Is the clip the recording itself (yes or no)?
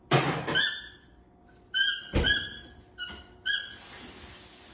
yes